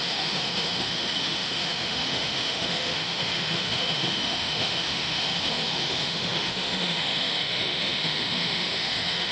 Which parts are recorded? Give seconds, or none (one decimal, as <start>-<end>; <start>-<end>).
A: none